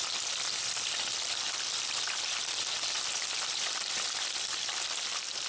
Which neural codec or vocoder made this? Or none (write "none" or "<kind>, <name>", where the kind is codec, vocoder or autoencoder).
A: none